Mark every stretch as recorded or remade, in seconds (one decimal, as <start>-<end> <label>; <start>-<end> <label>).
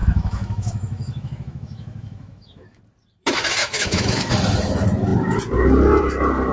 0.0-2.8 remade; 2.8-3.6 recorded; 3.6-4.3 remade; 4.3-6.5 recorded